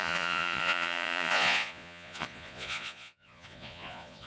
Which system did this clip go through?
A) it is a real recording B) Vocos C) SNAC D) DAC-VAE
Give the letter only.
B